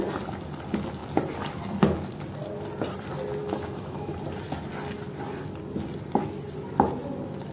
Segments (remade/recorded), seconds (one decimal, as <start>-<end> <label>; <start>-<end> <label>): 0.0-3.4 recorded; 3.4-4.1 remade; 4.1-7.5 recorded